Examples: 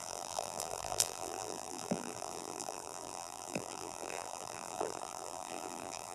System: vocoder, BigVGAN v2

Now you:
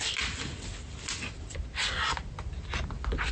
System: none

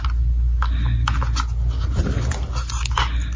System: none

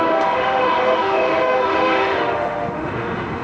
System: autoencoder, DAC-VAE